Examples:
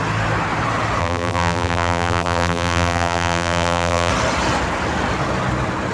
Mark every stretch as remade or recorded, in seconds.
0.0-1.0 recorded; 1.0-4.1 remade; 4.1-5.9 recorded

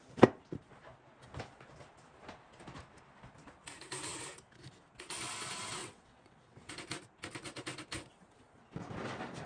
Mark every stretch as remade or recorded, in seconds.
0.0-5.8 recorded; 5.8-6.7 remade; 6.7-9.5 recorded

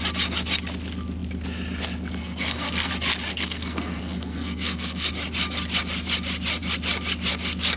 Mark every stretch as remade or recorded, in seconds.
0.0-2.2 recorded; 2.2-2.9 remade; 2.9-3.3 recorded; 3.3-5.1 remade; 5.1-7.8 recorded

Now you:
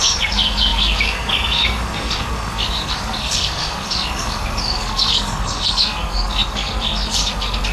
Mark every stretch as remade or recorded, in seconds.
0.0-7.7 remade

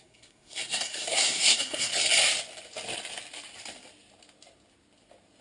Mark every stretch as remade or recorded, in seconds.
0.0-1.9 remade; 1.9-5.4 recorded